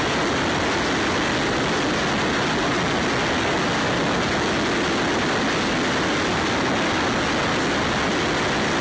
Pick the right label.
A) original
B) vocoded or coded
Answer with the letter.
A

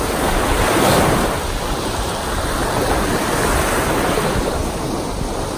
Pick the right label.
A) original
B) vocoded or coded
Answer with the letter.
A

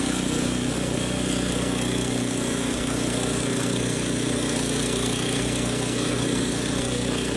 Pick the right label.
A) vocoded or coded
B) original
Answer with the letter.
A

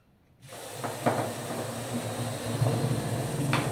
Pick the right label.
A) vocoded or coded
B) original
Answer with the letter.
B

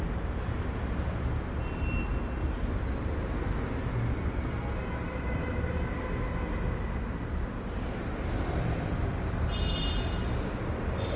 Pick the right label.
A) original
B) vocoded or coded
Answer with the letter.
A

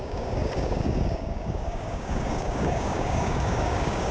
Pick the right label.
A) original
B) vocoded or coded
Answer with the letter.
B